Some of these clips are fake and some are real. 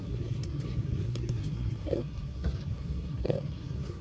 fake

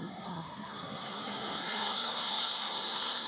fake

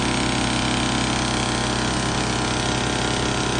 real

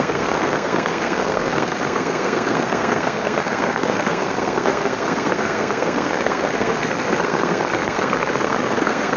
fake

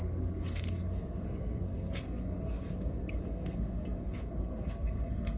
fake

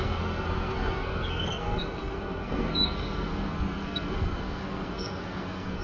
fake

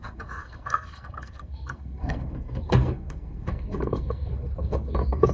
fake